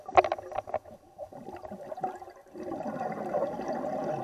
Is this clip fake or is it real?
real